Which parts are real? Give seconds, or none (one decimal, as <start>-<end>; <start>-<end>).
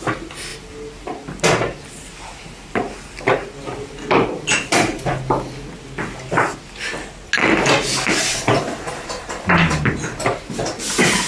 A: 0.0-11.3